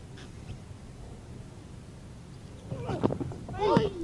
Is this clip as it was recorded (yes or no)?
no